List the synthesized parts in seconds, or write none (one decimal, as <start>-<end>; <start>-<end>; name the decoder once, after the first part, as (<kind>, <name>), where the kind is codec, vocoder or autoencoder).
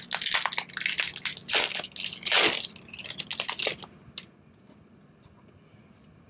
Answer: none